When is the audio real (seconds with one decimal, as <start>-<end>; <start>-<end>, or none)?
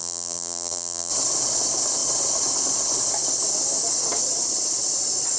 1.1-5.4